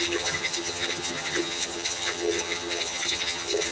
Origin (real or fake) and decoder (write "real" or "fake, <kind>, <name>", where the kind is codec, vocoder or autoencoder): fake, vocoder, HiFi-GAN